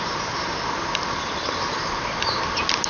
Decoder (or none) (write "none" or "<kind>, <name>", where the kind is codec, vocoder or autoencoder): none